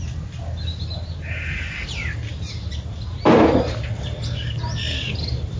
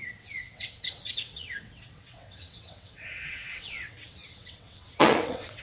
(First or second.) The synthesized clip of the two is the second